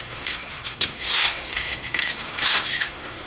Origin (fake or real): fake